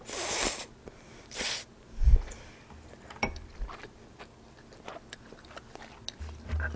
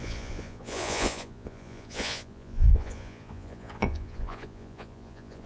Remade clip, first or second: second